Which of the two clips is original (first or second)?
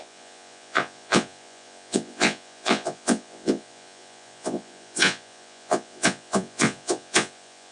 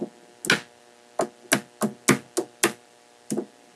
second